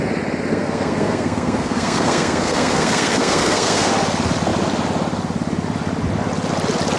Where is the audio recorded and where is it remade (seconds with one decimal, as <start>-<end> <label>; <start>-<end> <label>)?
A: 0.0-0.5 recorded; 0.5-3.9 remade; 3.9-7.0 recorded